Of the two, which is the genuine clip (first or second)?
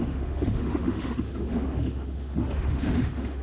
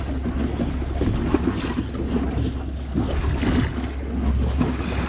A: second